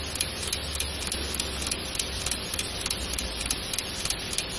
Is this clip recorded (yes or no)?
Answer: yes